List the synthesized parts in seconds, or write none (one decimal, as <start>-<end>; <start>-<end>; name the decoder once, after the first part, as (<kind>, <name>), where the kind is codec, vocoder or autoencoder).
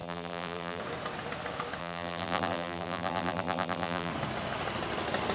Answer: 0.0-0.8 (vocoder, BigVGAN v2); 1.8-4.1